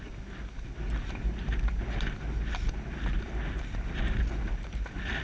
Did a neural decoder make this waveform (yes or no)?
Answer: no